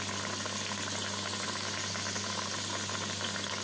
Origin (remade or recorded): recorded